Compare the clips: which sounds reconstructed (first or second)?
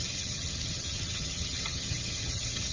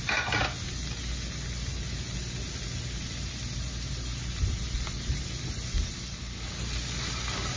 first